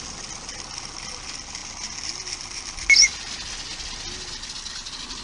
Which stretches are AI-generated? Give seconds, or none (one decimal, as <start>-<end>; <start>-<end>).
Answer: none